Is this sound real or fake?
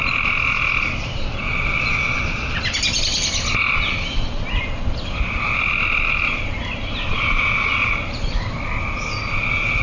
real